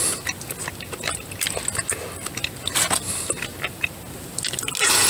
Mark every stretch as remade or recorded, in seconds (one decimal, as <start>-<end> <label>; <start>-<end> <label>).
0.0-5.1 recorded